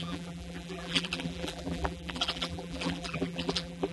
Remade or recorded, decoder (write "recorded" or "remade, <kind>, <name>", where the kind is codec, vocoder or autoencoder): remade, vocoder, BigVGAN v2